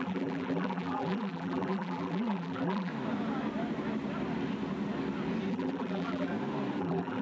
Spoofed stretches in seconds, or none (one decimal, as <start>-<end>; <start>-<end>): 0.0-2.9; 5.5-6.3; 6.8-7.2

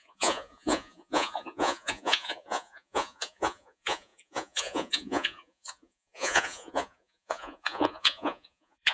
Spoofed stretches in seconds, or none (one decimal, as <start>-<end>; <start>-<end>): 0.0-8.9

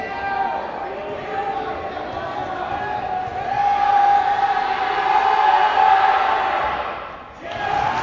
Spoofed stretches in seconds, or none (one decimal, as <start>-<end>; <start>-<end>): none

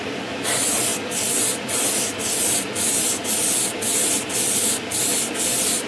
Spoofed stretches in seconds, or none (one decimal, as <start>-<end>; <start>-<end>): none

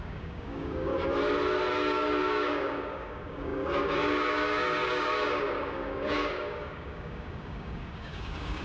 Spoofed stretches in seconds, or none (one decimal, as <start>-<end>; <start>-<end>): 0.0-0.9; 1.7-8.6